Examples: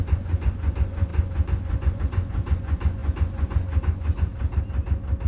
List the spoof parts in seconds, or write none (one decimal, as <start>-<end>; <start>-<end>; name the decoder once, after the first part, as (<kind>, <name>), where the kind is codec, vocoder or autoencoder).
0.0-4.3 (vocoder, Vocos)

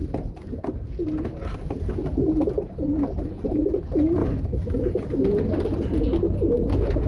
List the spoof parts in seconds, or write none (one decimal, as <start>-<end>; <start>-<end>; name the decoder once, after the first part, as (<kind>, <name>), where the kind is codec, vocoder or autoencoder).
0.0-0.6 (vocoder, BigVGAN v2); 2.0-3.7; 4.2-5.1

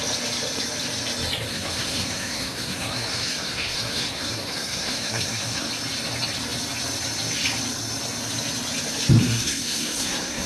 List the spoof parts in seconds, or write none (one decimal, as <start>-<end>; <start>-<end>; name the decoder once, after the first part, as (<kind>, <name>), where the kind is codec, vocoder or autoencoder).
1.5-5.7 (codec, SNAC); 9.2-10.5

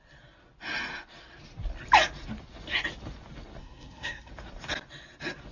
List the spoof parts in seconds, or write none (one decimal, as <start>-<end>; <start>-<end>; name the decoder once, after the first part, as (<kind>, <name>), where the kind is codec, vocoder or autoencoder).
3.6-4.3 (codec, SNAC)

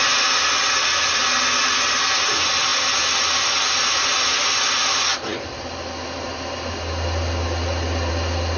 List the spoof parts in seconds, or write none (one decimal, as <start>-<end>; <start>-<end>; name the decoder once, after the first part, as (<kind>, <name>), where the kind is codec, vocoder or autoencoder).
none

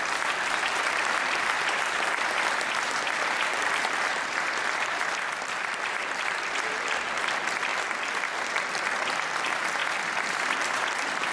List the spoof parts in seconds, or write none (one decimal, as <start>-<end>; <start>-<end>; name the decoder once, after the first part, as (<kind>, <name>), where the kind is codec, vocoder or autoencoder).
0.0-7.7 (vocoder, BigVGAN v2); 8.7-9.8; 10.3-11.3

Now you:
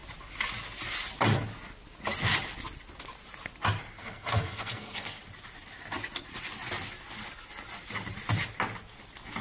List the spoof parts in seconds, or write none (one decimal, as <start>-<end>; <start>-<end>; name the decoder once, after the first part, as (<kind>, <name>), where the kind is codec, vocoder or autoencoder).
4.0-5.2 (codec, SNAC)

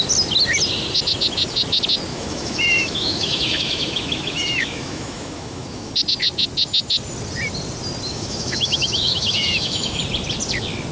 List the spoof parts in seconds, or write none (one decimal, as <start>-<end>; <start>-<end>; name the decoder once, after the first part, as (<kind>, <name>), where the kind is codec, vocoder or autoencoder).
2.1-5.9 (autoencoder, DAC-VAE); 8.1-10.0